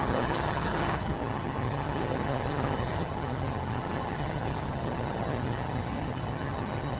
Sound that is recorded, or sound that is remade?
remade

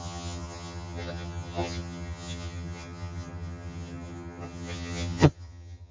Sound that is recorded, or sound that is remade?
remade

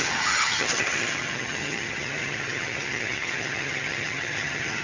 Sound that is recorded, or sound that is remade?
remade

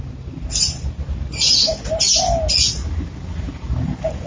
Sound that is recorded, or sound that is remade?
recorded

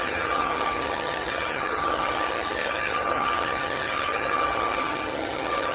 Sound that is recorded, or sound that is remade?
remade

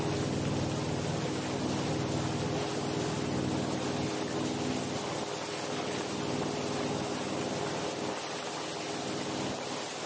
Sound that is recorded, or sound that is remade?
recorded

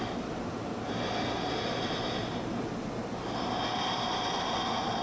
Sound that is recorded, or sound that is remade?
recorded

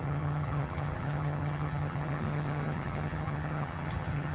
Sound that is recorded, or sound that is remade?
remade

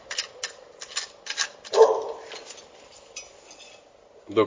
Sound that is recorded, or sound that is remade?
recorded